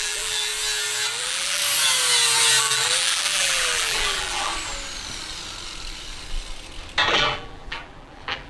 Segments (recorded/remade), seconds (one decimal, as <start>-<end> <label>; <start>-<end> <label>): 0.0-0.5 remade; 0.5-1.2 recorded; 1.2-1.6 remade; 1.6-2.6 recorded; 2.6-4.5 remade; 4.5-7.1 recorded; 7.1-8.5 remade